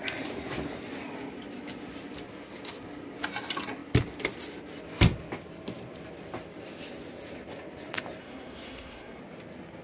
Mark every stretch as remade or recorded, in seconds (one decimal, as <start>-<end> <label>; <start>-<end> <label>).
0.0-8.2 recorded; 8.2-9.2 remade; 9.2-9.8 recorded